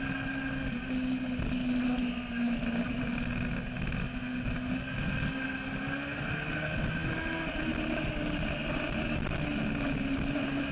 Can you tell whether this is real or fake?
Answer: real